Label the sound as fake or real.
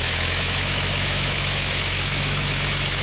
fake